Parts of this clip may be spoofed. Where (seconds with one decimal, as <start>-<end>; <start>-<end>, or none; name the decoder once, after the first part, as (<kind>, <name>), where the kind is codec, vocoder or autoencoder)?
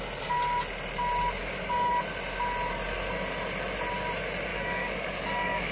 1.4-1.9 (codec, DAC); 4.5-5.7